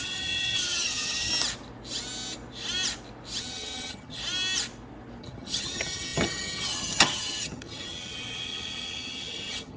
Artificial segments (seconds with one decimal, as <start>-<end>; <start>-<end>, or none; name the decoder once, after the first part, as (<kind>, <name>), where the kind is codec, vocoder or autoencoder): 0.0-1.3 (vocoder, HiFi-GAN); 3.4-4.2; 5.2-9.8